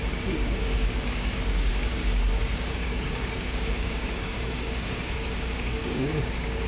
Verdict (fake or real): fake